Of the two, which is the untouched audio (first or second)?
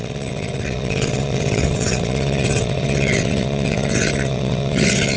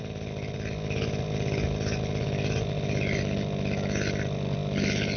second